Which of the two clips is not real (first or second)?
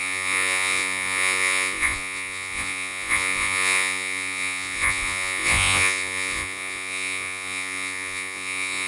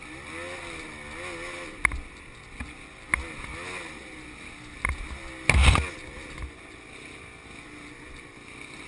first